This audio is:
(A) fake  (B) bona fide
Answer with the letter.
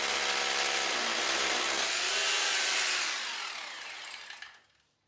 B